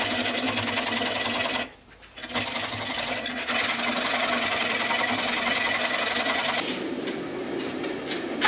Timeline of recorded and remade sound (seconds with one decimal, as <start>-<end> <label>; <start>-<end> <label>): 0.0-8.5 recorded